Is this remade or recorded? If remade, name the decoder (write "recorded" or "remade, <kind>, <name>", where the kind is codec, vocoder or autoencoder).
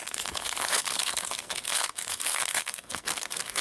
remade, codec, SNAC